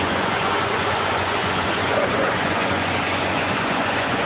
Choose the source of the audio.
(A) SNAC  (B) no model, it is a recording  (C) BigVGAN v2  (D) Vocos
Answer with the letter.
D